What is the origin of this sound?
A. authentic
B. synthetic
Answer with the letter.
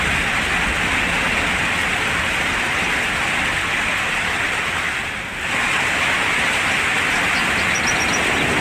A